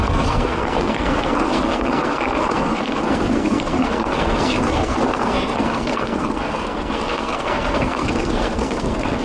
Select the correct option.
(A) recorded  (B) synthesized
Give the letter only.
B